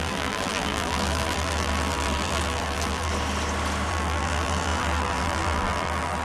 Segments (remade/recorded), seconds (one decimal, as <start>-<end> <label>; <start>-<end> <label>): 0.0-3.1 remade; 3.1-3.9 recorded; 3.9-6.2 remade